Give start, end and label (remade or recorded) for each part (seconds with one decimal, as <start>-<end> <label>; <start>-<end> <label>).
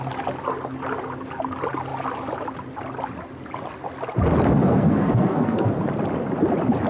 0.0-4.6 recorded; 4.6-5.7 remade; 5.7-6.9 recorded